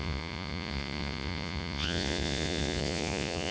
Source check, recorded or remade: remade